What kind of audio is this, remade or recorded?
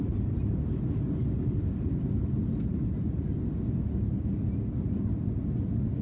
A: recorded